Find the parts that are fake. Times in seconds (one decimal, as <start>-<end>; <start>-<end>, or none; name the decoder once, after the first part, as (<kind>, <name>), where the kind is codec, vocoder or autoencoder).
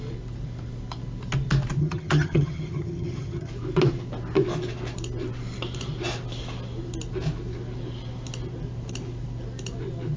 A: 1.8-3.5 (vocoder, HiFi-GAN)